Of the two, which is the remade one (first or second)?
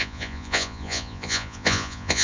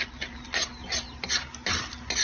first